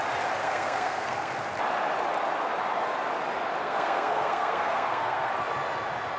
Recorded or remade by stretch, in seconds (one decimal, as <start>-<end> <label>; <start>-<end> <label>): 0.0-0.4 recorded; 0.4-1.3 remade; 1.3-3.6 recorded; 3.6-5.3 remade; 5.3-6.2 recorded